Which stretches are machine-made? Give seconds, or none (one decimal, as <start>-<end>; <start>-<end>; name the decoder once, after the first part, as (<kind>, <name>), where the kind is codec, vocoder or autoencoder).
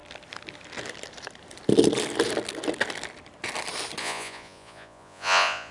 4.0-5.7 (vocoder, Vocos)